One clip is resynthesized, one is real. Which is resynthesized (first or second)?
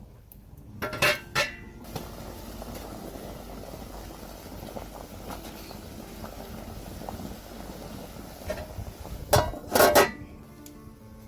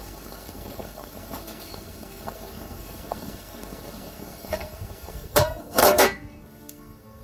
second